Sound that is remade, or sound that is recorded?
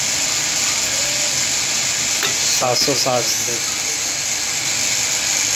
recorded